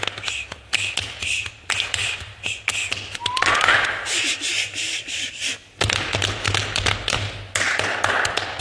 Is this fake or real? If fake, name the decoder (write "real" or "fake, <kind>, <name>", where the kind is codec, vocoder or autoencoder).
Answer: real